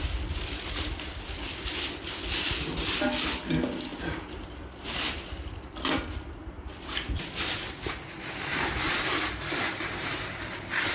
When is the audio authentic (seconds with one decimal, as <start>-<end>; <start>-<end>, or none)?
0.0-10.9